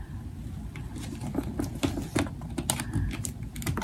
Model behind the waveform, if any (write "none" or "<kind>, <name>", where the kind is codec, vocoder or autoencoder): none